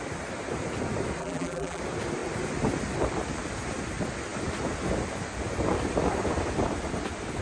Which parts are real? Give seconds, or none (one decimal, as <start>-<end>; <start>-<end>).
0.0-1.2; 1.8-7.4